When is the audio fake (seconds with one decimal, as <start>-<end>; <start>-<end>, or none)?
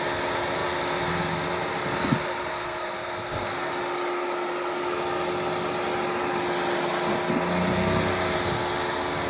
2.5-3.7